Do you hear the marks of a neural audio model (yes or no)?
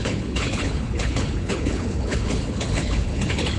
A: yes